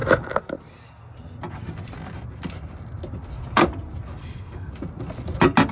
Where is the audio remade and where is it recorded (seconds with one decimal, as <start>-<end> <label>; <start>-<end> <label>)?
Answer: 0.0-4.2 recorded; 4.2-4.7 remade; 4.7-5.7 recorded